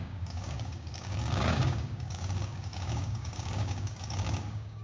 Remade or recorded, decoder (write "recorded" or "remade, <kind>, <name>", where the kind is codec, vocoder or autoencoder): remade, codec, DAC